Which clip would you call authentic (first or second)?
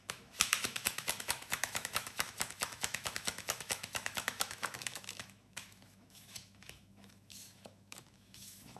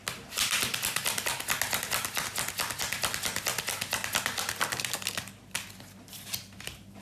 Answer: second